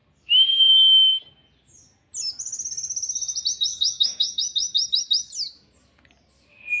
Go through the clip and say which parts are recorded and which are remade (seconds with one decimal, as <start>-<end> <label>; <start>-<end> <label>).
0.0-3.7 recorded; 3.7-4.4 remade; 4.4-6.8 recorded